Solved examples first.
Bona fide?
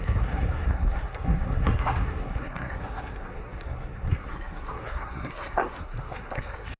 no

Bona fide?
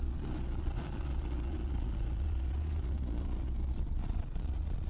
no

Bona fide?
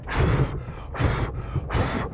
yes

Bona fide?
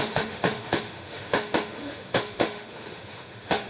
no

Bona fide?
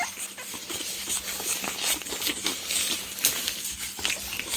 yes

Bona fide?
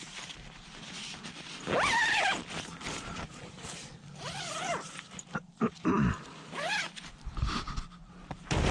no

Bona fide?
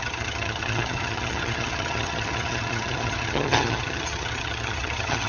no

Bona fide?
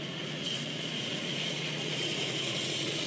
no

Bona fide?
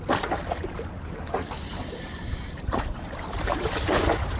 no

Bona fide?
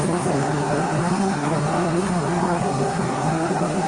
no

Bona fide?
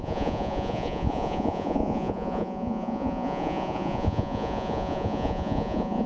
no